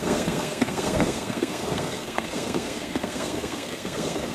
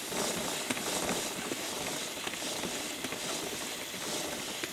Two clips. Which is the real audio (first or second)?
second